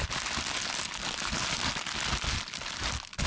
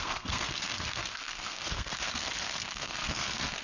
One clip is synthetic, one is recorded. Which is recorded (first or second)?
first